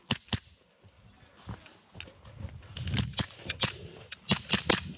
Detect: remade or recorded recorded